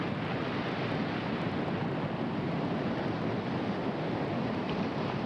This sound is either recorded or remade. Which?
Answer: recorded